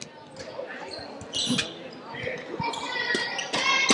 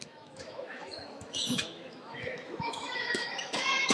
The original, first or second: first